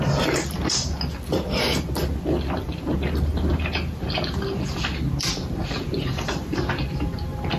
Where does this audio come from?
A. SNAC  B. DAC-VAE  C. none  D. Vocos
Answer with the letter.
C